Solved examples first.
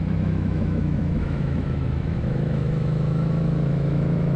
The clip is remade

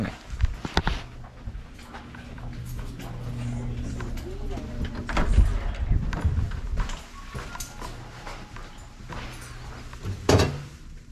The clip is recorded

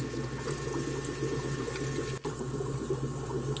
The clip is recorded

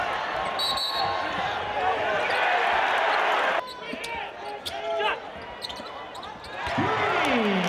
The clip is recorded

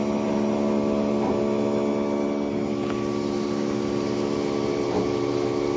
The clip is recorded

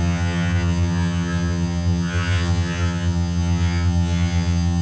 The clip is remade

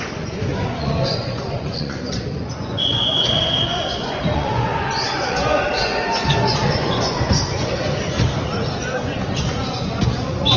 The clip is remade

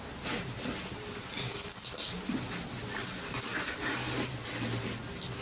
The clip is recorded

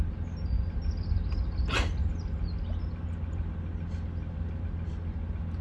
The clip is recorded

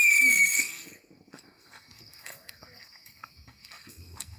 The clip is remade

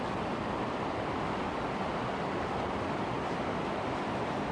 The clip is recorded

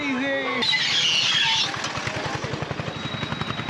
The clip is recorded